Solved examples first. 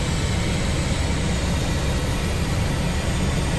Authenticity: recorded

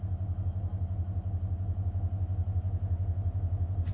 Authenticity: recorded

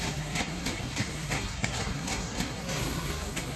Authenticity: remade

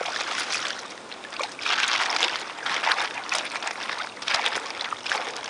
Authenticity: recorded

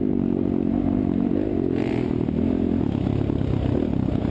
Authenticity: recorded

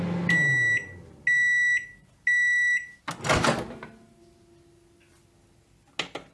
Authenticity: recorded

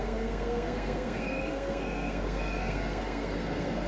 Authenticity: remade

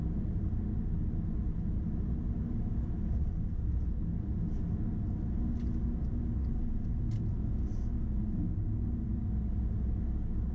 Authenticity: recorded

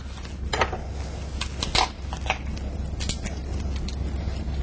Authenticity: recorded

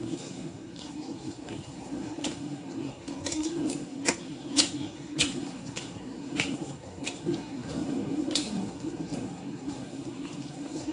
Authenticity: remade